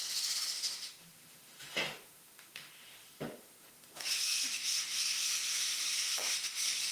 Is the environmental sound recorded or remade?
remade